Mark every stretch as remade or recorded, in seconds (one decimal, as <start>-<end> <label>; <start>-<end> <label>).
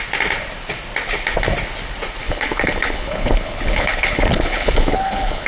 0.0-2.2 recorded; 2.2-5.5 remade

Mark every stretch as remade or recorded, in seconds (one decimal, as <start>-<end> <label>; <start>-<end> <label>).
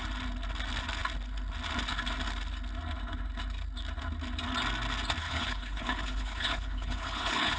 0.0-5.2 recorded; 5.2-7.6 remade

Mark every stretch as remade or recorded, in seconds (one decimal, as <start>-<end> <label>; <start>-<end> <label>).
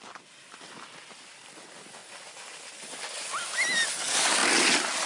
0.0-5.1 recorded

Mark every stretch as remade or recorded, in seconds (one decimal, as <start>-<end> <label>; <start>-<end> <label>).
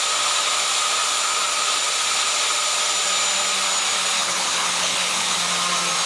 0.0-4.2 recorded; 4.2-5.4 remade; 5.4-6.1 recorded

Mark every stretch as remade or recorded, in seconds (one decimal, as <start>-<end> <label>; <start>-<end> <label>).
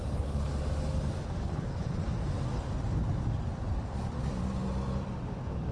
0.0-0.5 remade; 0.5-1.4 recorded; 1.4-2.0 remade; 2.0-5.7 recorded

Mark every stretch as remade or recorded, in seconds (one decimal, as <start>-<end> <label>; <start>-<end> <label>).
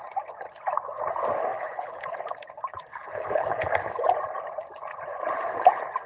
0.0-1.5 recorded; 1.5-2.0 remade; 2.0-2.9 recorded; 2.9-3.7 remade; 3.7-6.1 recorded